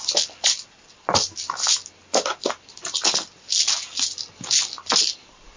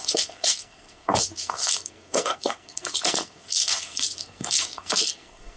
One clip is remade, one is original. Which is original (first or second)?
first